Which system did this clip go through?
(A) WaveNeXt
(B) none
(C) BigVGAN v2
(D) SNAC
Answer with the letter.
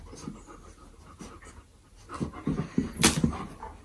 B